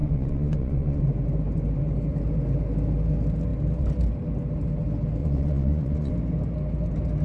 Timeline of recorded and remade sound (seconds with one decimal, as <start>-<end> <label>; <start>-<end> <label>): 0.0-1.0 remade; 1.0-5.2 recorded; 5.2-6.1 remade; 6.1-7.2 recorded